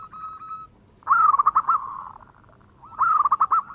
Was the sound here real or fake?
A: real